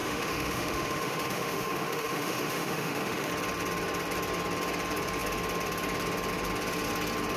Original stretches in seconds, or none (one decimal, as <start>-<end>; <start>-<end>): 3.3-7.4